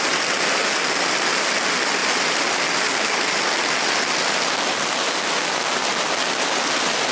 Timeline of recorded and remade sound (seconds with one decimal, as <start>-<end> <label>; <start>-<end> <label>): 0.0-7.1 recorded